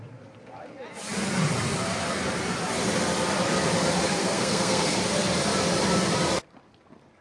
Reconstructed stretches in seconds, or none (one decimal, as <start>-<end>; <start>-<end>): 4.2-5.0